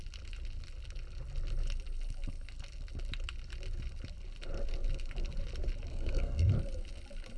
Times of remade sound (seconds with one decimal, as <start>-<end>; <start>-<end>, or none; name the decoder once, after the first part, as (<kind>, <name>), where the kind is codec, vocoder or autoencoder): 5.9-6.5 (codec, SNAC)